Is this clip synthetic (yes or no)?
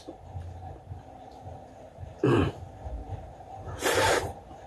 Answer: yes